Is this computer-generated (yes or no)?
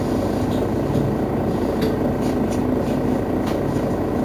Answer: no